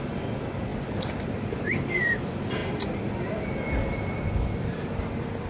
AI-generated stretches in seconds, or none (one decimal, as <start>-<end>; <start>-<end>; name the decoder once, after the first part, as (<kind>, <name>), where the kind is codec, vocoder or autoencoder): 0.0-2.6 (vocoder, BigVGAN v2); 3.2-5.5